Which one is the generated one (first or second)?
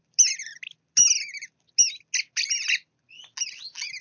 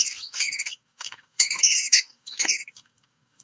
second